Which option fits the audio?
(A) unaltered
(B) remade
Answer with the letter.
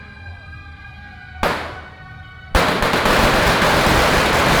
A